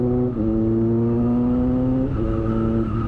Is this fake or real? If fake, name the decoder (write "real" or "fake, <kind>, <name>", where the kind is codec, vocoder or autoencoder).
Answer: real